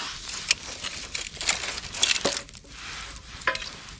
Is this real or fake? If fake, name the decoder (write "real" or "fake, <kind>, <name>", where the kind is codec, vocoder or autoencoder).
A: real